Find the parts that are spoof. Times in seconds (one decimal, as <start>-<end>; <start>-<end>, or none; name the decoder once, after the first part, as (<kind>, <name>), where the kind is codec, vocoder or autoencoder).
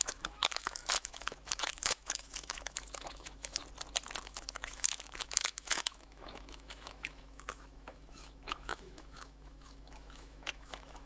0.0-3.6 (autoencoder, DAC-VAE); 4.2-11.1